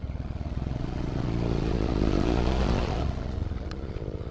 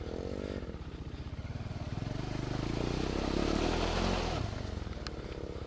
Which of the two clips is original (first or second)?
second